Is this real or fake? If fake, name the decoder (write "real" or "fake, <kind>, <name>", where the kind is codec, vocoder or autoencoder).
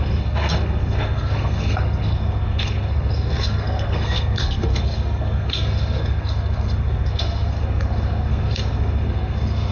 fake, codec, SNAC